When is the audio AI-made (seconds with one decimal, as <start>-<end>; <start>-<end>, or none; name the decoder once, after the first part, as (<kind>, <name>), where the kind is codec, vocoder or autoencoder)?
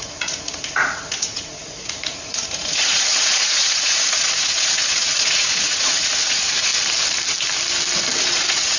0.0-6.7 (vocoder, Vocos); 8.2-8.8